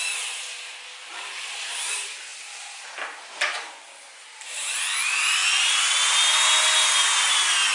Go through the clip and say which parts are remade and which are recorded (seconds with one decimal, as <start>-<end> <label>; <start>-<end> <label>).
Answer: 0.0-7.7 recorded